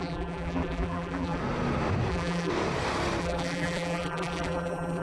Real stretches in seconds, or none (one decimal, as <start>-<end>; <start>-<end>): 1.4-2.1; 2.5-3.2

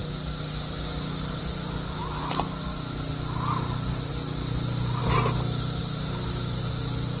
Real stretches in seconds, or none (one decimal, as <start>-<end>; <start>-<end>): 0.0-7.2